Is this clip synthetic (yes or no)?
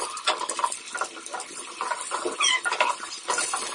no